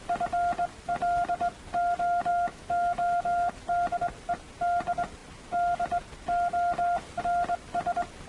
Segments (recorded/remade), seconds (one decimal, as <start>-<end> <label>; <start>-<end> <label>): 0.0-2.3 recorded; 2.3-3.5 remade; 3.5-8.3 recorded